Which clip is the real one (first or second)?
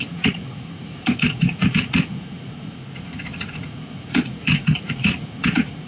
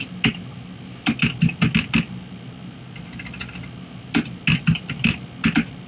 second